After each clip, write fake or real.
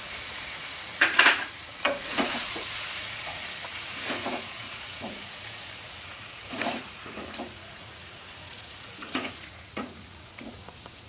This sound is fake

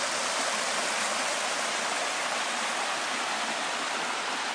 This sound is real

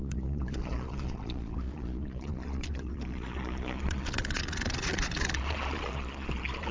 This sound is fake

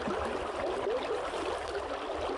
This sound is real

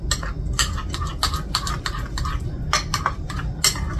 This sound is real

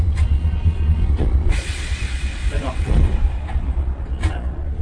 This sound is fake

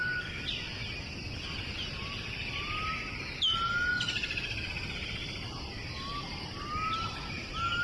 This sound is real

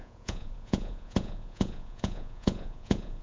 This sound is fake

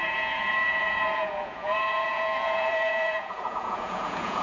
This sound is fake